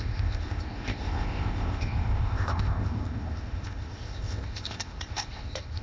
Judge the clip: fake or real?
fake